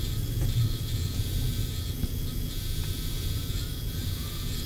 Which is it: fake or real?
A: fake